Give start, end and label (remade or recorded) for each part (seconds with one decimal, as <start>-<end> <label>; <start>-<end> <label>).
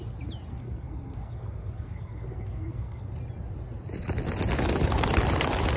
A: 0.0-0.5 recorded; 0.5-3.0 remade; 3.0-5.8 recorded